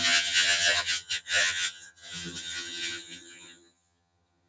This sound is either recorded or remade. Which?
remade